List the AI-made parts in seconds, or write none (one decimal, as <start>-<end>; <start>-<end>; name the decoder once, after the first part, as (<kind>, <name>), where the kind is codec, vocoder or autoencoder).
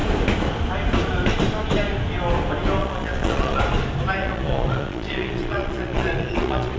2.8-3.6 (vocoder, Vocos); 4.2-6.8